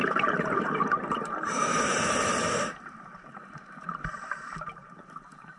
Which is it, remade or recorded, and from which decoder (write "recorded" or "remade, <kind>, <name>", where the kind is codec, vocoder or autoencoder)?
remade, vocoder, BigVGAN v2